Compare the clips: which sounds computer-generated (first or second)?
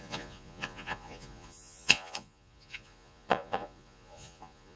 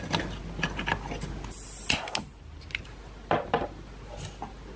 first